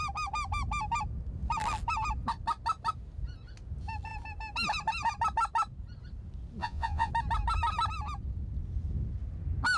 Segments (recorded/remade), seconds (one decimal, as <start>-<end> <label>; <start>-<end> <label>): 0.0-6.6 recorded; 6.6-7.1 remade; 7.1-9.8 recorded